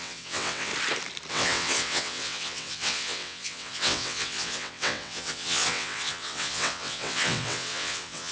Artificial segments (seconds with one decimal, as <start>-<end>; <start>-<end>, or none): 0.0-0.7; 1.3-8.3